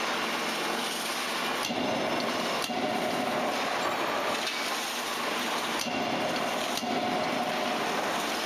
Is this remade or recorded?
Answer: recorded